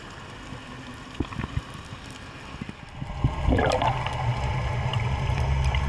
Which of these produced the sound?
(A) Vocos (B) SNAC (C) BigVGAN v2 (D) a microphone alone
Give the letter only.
D